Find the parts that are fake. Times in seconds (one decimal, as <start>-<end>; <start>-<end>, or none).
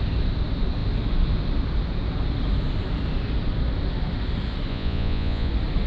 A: 4.7-5.5